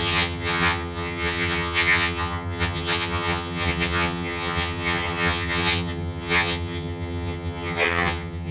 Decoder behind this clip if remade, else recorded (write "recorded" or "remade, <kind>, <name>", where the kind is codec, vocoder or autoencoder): remade, vocoder, HiFi-GAN